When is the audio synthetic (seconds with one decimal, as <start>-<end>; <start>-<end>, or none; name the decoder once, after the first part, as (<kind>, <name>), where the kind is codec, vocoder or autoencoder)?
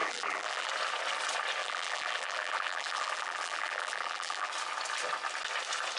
0.0-0.7 (vocoder, BigVGAN v2); 1.6-4.5